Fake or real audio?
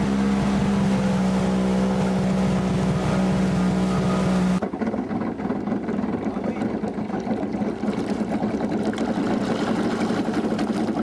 real